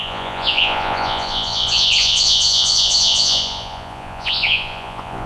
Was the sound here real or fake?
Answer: fake